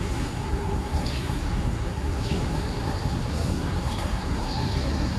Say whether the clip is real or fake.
fake